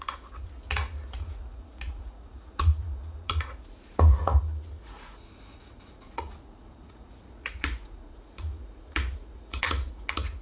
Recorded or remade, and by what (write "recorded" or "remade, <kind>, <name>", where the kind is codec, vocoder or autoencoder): remade, vocoder, Vocos